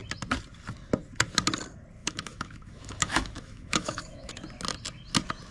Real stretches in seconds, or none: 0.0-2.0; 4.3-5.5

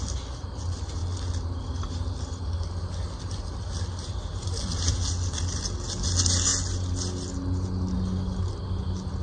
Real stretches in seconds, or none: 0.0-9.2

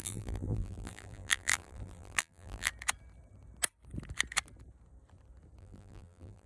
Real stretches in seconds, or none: 2.7-5.6

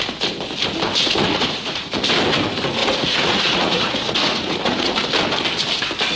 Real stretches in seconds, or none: 0.0-1.2; 1.9-2.8; 4.9-6.2